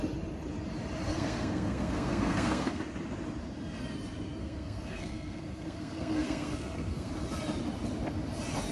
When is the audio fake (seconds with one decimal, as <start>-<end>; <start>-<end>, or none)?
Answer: 1.1-2.8; 4.4-7.1

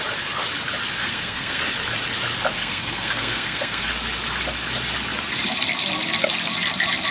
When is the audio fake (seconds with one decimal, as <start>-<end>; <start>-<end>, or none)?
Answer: 1.0-1.6; 2.6-3.9

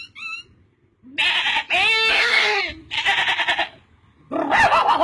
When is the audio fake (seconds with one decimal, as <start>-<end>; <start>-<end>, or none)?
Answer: 2.1-2.6

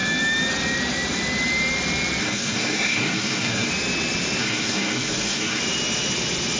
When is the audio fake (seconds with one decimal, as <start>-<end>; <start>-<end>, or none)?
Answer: 2.2-3.7; 4.4-5.6

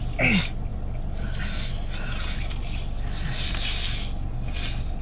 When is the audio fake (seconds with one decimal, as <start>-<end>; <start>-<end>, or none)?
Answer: none

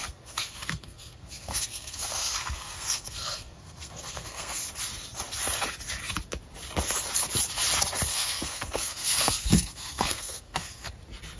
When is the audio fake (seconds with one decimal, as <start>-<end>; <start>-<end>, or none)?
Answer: 0.0-4.6; 8.1-10.9